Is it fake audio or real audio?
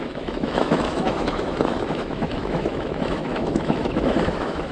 fake